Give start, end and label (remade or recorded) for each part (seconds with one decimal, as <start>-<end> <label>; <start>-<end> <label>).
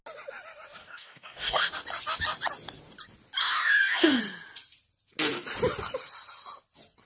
0.0-0.8 recorded; 0.8-1.7 remade; 1.7-3.4 recorded; 3.4-4.2 remade; 4.2-7.1 recorded